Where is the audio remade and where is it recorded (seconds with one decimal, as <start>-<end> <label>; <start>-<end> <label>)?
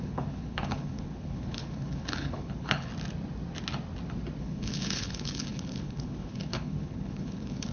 0.0-2.9 remade; 2.9-4.4 recorded; 4.4-7.7 remade